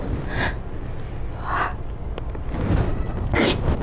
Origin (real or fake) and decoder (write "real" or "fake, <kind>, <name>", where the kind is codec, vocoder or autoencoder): real